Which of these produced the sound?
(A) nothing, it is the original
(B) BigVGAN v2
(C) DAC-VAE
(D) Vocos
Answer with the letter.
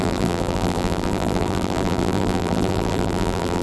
B